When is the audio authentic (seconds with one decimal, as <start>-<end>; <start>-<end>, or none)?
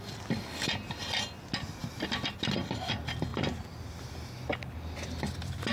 0.0-1.8; 2.7-5.7